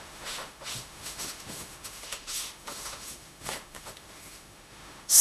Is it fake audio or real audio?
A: fake